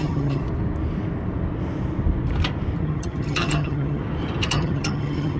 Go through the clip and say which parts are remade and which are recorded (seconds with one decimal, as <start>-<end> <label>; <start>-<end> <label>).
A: 0.0-0.4 remade; 0.4-2.8 recorded; 2.8-4.0 remade; 4.0-4.5 recorded; 4.5-5.4 remade